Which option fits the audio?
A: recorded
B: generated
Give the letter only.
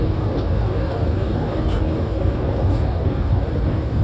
B